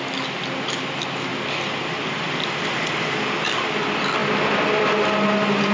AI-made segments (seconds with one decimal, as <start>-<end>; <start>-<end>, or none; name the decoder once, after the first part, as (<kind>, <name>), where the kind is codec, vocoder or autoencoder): 1.3-3.1 (vocoder, BigVGAN v2)